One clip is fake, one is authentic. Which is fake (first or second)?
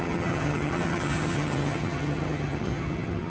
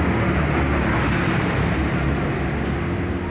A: first